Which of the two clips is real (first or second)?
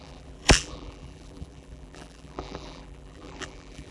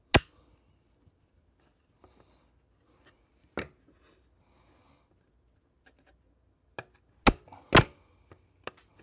second